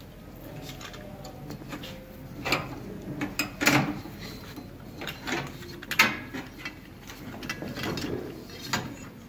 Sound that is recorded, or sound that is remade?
recorded